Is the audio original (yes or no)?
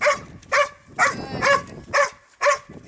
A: yes